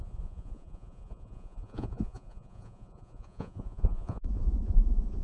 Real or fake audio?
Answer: fake